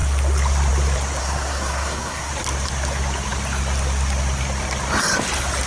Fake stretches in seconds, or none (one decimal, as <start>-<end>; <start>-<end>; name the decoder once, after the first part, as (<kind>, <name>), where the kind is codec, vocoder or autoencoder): 1.2-2.3 (codec, SNAC)